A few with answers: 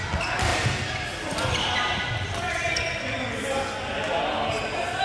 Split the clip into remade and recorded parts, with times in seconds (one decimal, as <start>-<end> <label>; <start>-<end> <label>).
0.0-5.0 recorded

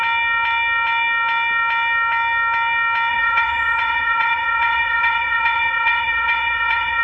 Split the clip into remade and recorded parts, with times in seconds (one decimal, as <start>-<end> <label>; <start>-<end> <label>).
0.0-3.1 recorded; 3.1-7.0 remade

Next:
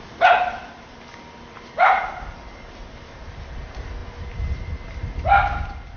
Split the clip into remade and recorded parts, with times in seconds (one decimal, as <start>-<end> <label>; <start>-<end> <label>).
0.0-6.0 recorded

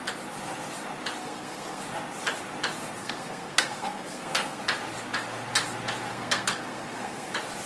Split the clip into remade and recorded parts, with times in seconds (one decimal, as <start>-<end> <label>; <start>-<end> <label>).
0.0-1.2 recorded; 1.2-1.8 remade; 1.8-3.0 recorded; 3.0-4.6 remade; 4.6-6.1 recorded; 6.1-7.3 remade; 7.3-7.7 recorded